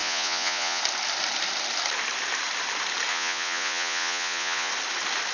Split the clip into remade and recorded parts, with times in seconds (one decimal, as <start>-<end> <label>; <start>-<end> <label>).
0.0-0.8 remade; 0.8-3.1 recorded; 3.1-4.7 remade; 4.7-5.3 recorded